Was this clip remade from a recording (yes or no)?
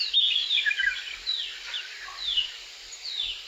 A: no